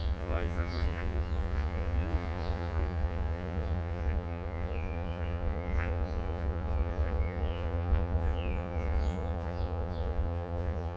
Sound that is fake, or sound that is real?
fake